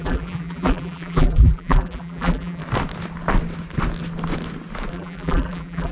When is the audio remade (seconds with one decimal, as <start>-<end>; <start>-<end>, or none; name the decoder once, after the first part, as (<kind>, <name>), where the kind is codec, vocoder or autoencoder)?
0.0-2.6 (vocoder, BigVGAN v2); 4.9-5.9